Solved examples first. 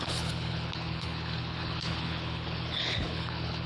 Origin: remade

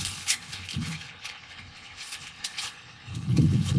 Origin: remade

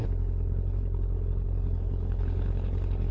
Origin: remade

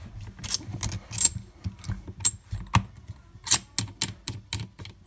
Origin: recorded